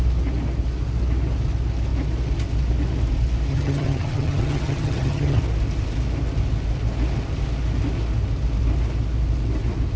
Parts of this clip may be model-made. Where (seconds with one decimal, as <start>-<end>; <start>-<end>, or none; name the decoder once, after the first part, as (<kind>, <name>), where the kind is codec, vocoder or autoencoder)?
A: 3.5-5.4 (vocoder, HiFi-GAN)